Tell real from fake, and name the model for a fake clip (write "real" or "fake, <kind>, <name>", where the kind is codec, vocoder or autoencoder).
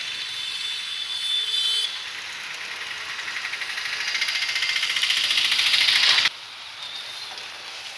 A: real